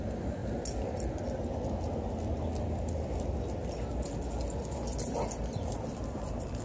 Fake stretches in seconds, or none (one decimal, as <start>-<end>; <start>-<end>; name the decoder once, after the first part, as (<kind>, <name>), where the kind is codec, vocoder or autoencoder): none